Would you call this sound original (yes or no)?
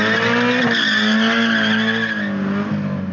yes